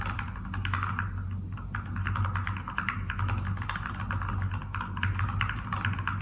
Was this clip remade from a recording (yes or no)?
no